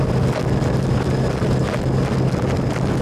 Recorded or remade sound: recorded